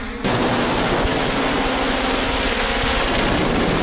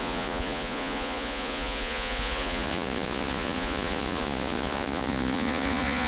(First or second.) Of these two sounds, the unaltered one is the first